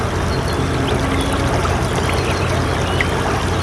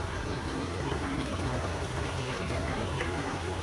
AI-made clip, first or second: second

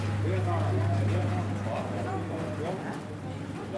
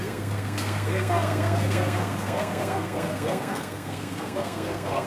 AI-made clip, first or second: second